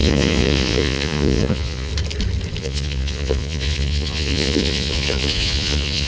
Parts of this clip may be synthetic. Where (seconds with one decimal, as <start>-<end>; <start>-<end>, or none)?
0.0-1.9; 2.6-6.1